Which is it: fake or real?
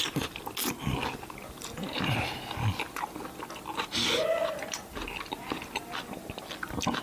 real